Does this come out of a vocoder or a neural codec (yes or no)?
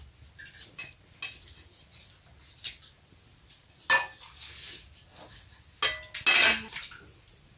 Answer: no